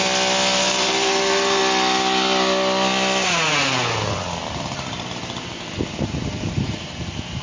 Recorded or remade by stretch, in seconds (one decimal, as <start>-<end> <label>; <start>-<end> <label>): 0.0-0.6 recorded; 0.6-1.6 remade; 1.6-4.5 recorded; 4.5-7.4 remade